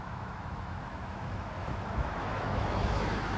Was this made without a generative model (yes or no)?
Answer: no